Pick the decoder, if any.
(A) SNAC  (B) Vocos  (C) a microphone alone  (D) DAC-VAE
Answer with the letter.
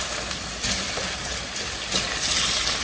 C